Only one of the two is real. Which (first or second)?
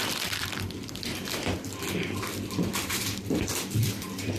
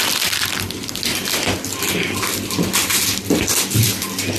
second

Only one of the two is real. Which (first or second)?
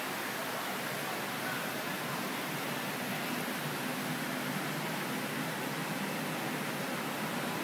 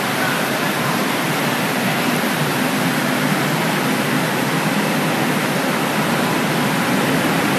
first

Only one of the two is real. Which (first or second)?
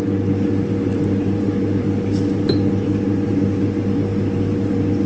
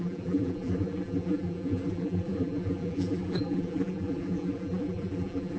first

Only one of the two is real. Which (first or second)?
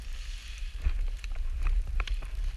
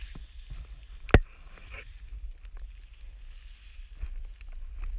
second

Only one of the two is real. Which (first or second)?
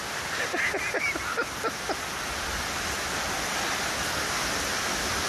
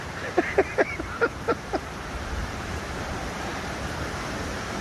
first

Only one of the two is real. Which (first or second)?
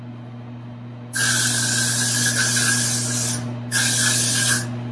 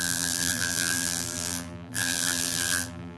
first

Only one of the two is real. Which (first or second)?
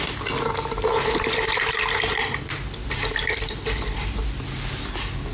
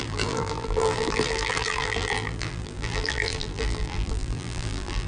first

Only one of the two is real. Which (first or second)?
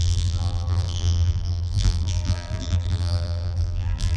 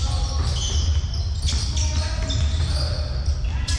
second